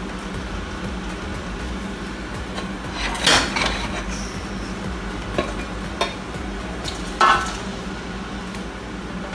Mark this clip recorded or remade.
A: recorded